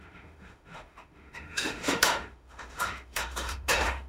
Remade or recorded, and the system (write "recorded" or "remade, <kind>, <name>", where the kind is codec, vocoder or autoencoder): remade, autoencoder, DAC-VAE